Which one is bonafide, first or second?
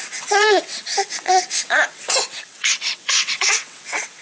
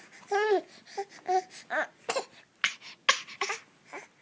second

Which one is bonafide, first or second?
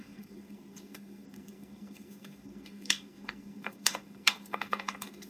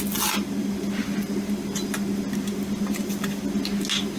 second